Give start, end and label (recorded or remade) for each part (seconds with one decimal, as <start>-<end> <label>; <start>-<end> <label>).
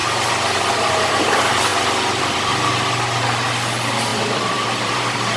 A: 0.0-4.1 recorded; 4.1-5.4 remade